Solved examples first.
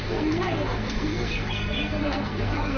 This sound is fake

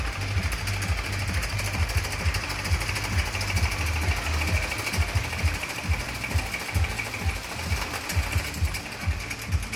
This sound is real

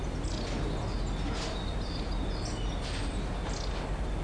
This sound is real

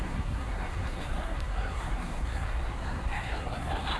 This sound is fake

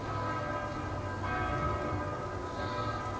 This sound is real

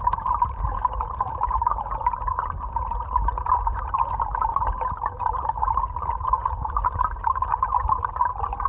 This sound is real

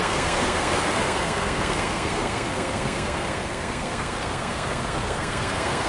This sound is fake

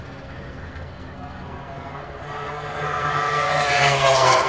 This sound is fake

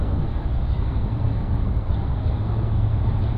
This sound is fake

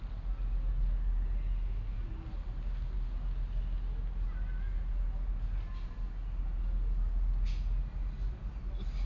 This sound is real